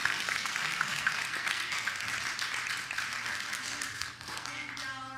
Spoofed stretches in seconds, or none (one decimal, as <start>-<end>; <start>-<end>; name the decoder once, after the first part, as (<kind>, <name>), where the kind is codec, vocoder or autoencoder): 0.0-2.1 (codec, SNAC); 3.1-4.7